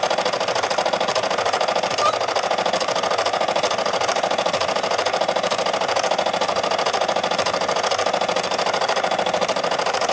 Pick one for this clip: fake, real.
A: real